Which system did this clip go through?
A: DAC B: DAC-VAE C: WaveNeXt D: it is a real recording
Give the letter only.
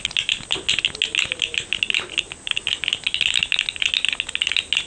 D